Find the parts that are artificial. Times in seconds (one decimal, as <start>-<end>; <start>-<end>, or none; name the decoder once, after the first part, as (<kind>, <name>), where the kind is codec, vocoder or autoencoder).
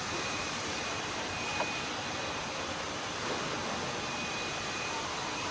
0.0-0.8 (vocoder, BigVGAN v2); 4.1-5.5